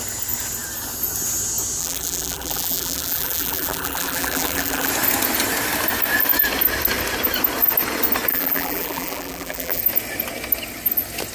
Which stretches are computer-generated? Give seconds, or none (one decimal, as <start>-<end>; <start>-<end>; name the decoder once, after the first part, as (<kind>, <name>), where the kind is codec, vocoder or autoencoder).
1.8-4.9 (vocoder, BigVGAN v2); 8.3-9.8